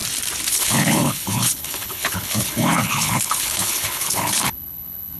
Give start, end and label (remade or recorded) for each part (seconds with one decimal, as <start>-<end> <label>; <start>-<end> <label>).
0.0-0.5 recorded; 0.5-5.2 remade